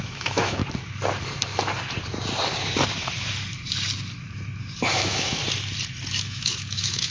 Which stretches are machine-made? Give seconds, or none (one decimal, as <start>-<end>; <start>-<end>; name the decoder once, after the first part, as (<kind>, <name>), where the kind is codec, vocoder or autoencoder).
0.0-0.6 (autoencoder, DAC-VAE); 4.9-5.4; 6.1-7.1